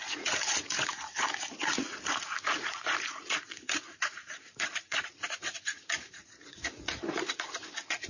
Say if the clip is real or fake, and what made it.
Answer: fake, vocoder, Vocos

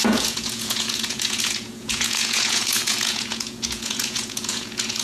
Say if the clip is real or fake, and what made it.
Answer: fake, vocoder, Vocos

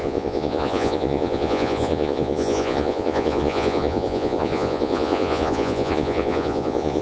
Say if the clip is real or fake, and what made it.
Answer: fake, vocoder, Vocos